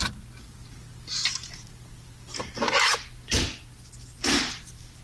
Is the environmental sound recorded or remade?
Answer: recorded